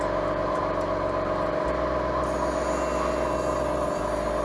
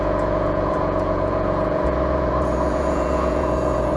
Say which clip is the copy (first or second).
second